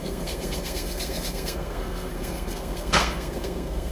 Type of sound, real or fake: fake